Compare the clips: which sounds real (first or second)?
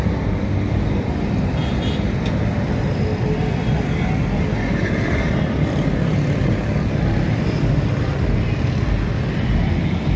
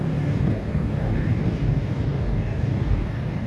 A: first